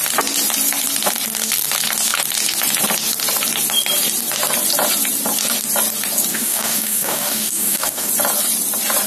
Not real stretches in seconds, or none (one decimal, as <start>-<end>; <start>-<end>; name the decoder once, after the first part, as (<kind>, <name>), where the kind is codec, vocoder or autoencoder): 6.3-8.1 (codec, DAC)